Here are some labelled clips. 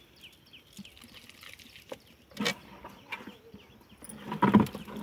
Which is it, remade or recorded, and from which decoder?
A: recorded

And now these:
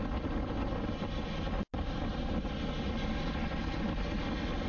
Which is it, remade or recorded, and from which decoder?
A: recorded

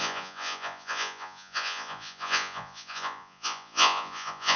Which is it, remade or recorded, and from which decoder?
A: remade, vocoder, Vocos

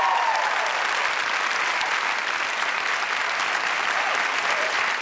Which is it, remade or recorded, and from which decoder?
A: recorded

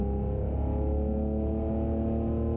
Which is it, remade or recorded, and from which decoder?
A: recorded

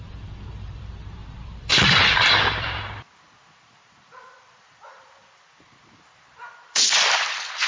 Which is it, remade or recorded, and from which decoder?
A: remade, vocoder, BigVGAN v2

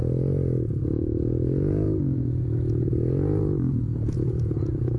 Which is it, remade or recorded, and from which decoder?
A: remade, vocoder, Vocos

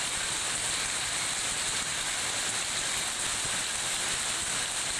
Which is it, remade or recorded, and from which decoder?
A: recorded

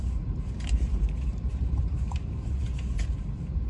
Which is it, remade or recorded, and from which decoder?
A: remade, vocoder, BigVGAN v2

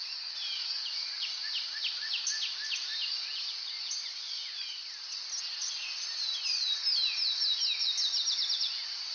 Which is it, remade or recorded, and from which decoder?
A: recorded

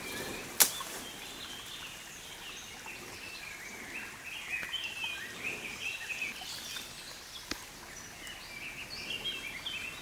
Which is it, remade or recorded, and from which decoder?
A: recorded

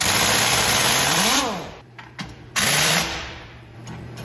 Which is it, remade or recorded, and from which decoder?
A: remade, vocoder, BigVGAN v2